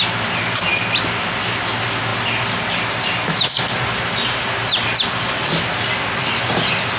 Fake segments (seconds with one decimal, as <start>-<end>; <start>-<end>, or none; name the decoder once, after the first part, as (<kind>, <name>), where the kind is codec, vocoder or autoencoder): none